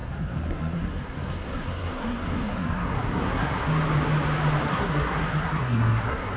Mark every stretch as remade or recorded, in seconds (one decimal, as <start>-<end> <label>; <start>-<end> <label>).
0.0-3.7 remade; 3.7-4.7 recorded; 4.7-6.4 remade